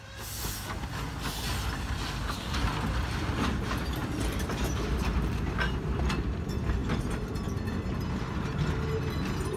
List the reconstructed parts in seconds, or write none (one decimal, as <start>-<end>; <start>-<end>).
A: 4.0-5.5